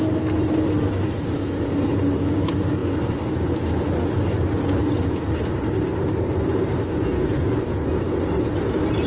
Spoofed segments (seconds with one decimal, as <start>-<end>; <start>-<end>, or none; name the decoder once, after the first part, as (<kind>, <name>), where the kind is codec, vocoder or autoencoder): 0.0-2.8 (vocoder, BigVGAN v2); 3.7-9.1